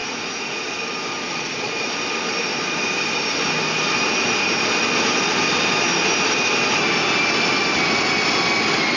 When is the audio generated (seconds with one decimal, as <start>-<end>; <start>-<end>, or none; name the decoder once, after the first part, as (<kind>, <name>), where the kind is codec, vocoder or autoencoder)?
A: 1.2-1.7 (vocoder, Vocos)